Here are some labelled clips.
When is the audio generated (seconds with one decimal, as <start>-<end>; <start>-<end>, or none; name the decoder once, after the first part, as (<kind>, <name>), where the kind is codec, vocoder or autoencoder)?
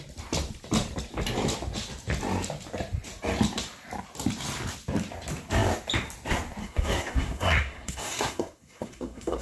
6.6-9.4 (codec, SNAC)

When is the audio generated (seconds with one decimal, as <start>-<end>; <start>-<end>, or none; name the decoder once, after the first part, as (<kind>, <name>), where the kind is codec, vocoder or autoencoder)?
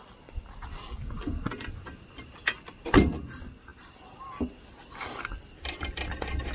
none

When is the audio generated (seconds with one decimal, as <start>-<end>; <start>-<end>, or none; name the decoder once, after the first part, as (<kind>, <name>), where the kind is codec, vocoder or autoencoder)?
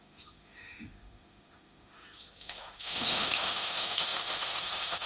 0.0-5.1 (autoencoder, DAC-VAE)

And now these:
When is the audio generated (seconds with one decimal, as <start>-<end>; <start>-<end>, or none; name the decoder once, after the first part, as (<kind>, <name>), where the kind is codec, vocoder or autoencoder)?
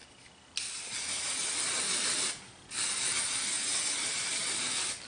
none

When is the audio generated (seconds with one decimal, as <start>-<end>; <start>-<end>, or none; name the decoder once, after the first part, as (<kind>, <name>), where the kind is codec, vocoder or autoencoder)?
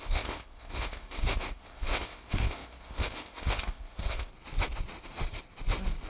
0.0-4.3 (codec, ZipCodec)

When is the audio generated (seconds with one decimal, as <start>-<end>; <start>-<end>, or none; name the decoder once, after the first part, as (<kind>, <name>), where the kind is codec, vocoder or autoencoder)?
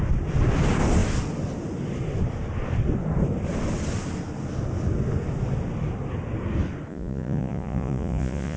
6.9-8.6 (vocoder, Vocos)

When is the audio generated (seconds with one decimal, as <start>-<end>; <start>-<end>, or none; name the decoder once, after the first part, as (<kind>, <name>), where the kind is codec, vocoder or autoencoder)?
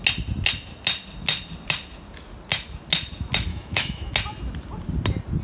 3.5-4.1 (autoencoder, DAC-VAE)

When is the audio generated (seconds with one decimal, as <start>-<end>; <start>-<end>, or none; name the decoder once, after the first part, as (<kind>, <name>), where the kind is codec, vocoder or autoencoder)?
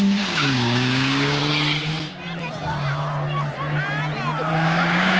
0.0-1.4 (codec, DAC); 4.5-5.2